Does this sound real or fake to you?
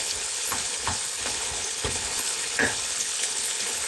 fake